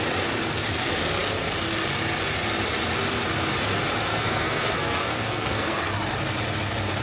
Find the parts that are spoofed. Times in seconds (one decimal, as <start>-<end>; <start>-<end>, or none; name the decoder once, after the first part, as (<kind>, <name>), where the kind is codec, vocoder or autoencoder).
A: 4.1-5.9 (codec, SNAC)